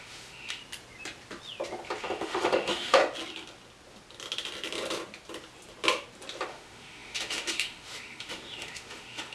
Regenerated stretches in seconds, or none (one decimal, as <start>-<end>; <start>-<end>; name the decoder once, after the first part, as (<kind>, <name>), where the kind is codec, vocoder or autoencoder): 0.0-0.6 (autoencoder, DAC-VAE); 2.0-3.0; 6.5-9.3